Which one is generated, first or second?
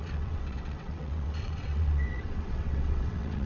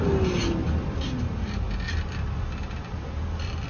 first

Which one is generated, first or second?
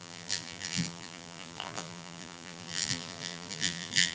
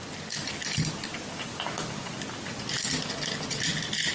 first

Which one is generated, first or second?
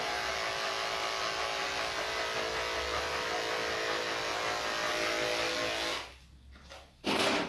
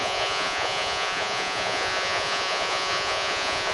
second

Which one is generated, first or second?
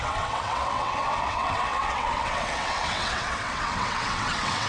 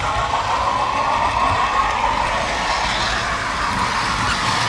first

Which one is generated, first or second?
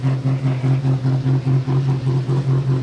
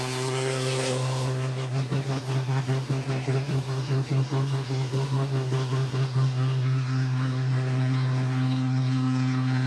second